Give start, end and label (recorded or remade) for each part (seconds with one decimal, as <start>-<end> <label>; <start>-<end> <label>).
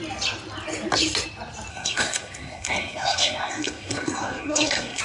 0.0-1.7 recorded; 1.7-5.0 remade